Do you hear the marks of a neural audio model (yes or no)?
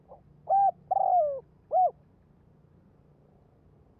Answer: no